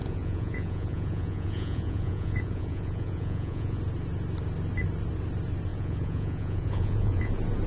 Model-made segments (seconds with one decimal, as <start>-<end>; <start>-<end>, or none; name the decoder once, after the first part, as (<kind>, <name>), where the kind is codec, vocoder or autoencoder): 0.0-3.8 (vocoder, Vocos); 5.7-7.3